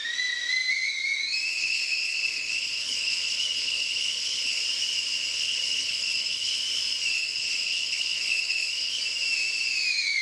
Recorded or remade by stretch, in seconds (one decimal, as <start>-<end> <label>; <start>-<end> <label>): 0.0-1.5 recorded; 1.5-4.6 remade; 4.6-5.3 recorded; 5.3-6.6 remade; 6.6-7.1 recorded; 7.1-9.0 remade; 9.0-10.2 recorded